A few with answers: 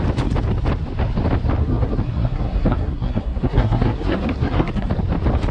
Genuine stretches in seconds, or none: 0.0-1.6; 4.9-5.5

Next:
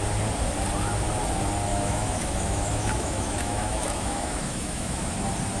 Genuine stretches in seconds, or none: 0.0-1.7; 5.1-5.6